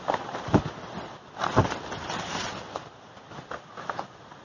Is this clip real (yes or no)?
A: yes